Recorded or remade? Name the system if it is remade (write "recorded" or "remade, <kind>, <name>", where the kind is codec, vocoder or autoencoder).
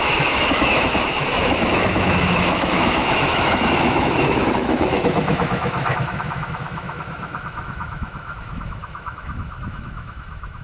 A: remade, autoencoder, DAC-VAE